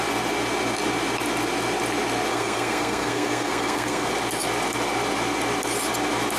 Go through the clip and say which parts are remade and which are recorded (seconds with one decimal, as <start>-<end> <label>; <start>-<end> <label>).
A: 0.0-2.3 recorded; 2.3-4.1 remade; 4.1-6.4 recorded